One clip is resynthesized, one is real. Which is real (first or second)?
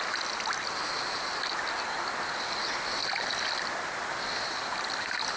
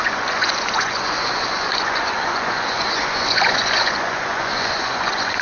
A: first